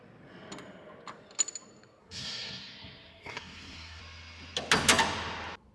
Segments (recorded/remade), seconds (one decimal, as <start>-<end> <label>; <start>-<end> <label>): 0.0-2.0 recorded; 2.0-4.0 remade; 4.0-5.7 recorded

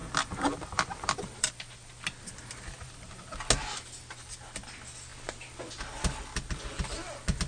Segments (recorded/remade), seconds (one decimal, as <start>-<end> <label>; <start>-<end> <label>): 0.0-1.5 remade; 1.5-7.5 recorded

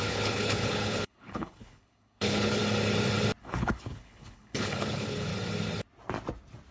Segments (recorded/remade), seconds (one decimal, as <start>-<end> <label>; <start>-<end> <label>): 0.0-2.6 remade; 2.6-3.4 recorded; 3.4-5.3 remade; 5.3-6.7 recorded